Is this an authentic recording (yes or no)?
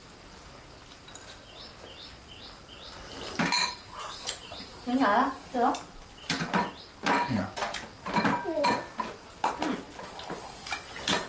yes